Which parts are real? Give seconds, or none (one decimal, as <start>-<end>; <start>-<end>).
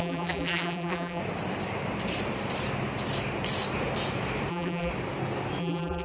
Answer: 1.2-4.5; 4.9-5.6